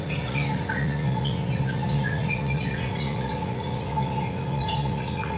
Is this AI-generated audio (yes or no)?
yes